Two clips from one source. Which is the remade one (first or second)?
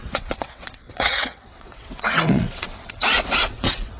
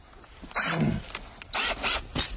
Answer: first